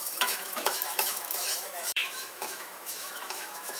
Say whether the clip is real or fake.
fake